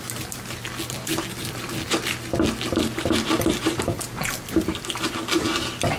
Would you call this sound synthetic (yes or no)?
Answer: no